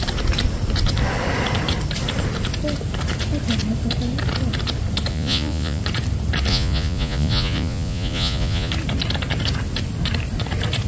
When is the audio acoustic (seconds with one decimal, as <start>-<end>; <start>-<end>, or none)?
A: 0.0-5.1; 5.8-6.5; 8.7-10.9